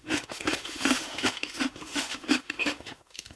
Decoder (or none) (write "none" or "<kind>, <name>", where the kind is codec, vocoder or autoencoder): autoencoder, DAC-VAE